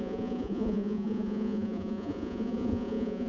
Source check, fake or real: fake